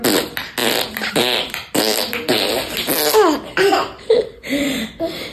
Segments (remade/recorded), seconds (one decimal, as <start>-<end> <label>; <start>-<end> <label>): 0.0-0.6 recorded; 0.6-1.8 remade; 1.8-5.3 recorded